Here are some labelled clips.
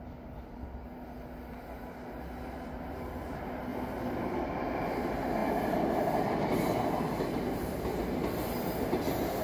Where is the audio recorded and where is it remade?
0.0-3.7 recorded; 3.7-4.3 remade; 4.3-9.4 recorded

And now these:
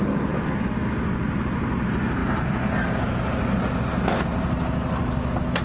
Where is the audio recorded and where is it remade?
0.0-5.6 recorded

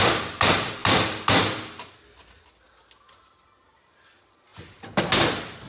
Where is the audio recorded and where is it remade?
0.0-5.7 recorded

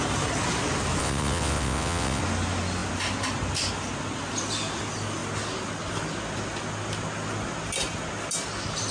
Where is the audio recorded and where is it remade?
0.0-1.0 recorded; 1.0-2.2 remade; 2.2-8.9 recorded